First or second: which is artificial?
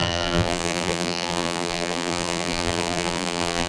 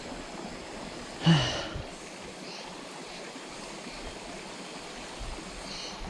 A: first